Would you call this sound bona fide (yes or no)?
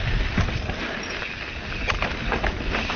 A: no